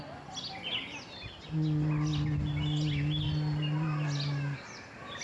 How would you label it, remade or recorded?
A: recorded